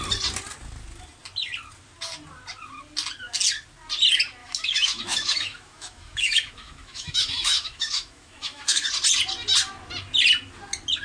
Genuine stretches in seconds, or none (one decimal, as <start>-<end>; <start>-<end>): 0.0-4.4; 8.9-11.0